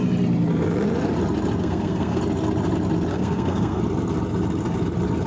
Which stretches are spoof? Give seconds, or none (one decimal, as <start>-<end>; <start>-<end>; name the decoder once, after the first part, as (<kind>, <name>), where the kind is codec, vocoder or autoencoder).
1.6-2.2 (codec, SNAC); 3.1-3.8